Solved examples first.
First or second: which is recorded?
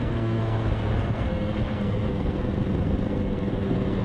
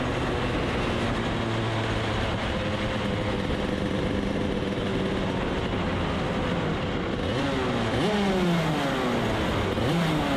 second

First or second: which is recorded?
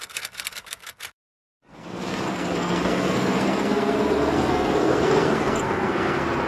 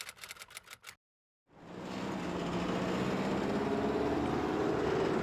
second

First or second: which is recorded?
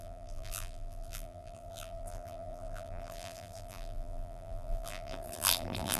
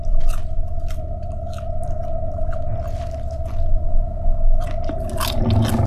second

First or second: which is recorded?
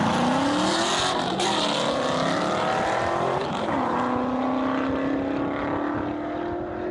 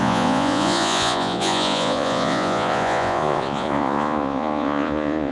first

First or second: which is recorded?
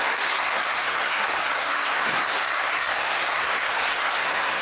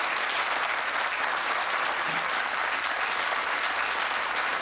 second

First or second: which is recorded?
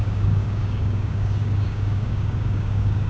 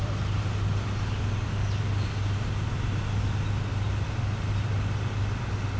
second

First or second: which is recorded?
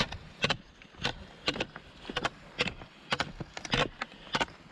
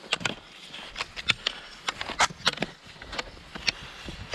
second